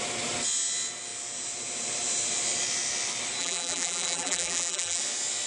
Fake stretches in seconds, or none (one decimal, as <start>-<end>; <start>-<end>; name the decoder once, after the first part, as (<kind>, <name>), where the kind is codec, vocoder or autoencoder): 3.4-5.0 (vocoder, BigVGAN v2)